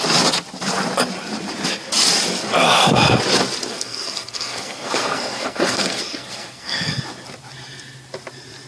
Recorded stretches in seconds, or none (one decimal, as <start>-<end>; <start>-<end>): 0.0-2.6; 3.2-3.7; 6.9-8.7